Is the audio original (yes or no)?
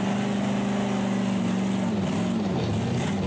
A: yes